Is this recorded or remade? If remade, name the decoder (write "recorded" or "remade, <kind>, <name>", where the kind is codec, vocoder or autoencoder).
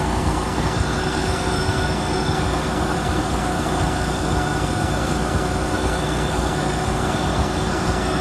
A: remade, codec, SNAC